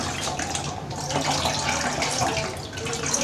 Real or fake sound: real